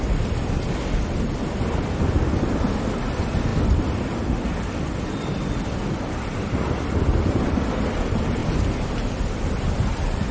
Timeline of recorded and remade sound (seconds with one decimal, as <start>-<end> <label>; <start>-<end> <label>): 0.0-3.5 recorded; 3.5-5.0 remade; 5.0-8.4 recorded; 8.4-8.9 remade; 8.9-10.3 recorded